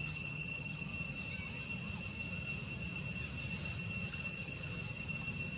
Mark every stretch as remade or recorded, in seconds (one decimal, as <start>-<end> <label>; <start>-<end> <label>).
0.0-0.9 remade; 0.9-4.3 recorded; 4.3-4.7 remade; 4.7-5.6 recorded